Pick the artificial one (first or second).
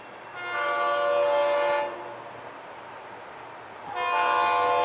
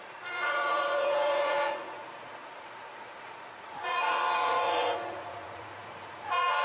second